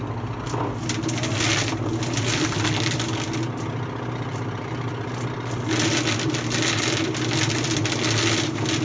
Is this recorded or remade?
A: recorded